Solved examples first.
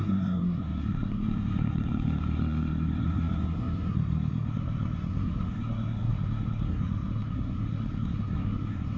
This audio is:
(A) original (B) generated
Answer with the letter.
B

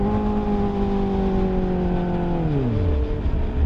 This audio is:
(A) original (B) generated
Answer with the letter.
A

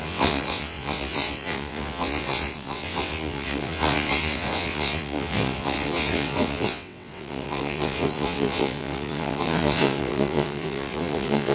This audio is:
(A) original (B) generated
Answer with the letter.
B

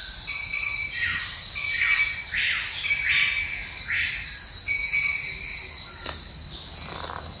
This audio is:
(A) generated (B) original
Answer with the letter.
B